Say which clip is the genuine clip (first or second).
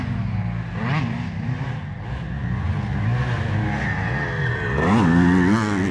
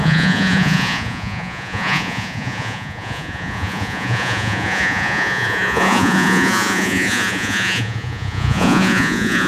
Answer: first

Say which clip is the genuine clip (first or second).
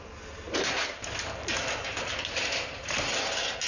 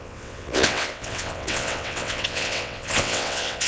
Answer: first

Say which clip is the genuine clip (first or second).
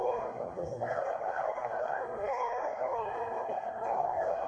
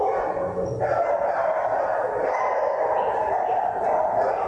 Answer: second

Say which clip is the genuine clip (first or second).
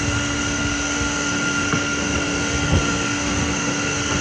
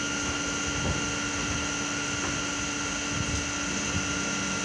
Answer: second